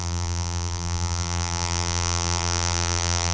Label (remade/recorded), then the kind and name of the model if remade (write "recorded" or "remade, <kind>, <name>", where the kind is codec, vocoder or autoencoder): remade, vocoder, BigVGAN v2